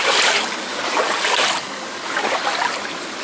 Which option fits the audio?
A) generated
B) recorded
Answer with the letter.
B